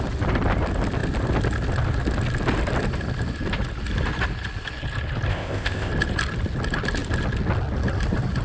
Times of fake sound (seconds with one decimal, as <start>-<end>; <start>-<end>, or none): 5.3-5.9